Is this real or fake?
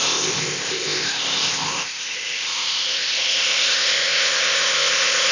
fake